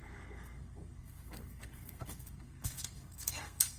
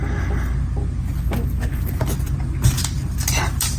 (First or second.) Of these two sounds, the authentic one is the second